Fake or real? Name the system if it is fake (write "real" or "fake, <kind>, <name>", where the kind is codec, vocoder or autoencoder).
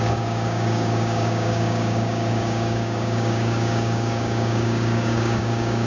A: fake, codec, DAC